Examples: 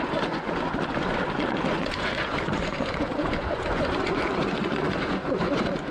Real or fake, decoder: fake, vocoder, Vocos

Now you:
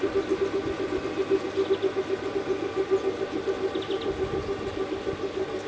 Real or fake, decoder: real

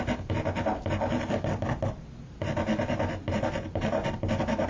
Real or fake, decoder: real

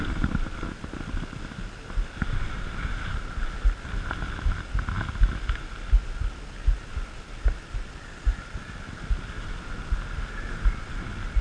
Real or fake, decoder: real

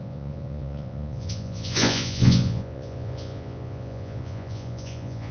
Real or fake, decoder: fake, vocoder, Vocos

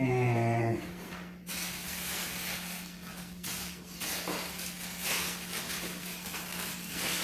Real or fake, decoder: fake, codec, SNAC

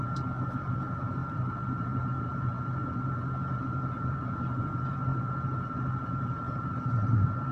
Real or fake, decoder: fake, vocoder, BigVGAN v2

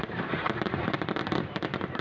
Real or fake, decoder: fake, vocoder, BigVGAN v2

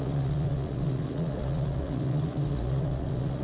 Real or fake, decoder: fake, vocoder, Vocos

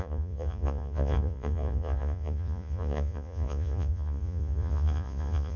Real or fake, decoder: fake, vocoder, Vocos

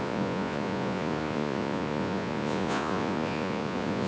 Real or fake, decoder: fake, vocoder, Vocos